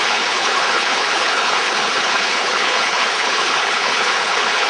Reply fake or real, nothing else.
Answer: fake